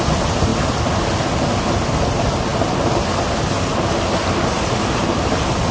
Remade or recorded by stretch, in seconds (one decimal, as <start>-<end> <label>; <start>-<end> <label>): 0.0-5.7 recorded